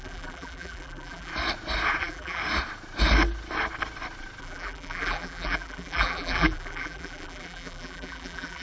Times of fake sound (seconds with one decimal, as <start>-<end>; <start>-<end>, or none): 0.0-1.3; 2.0-2.4; 4.4-8.6